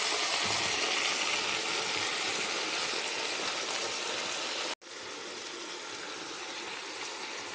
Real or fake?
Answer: real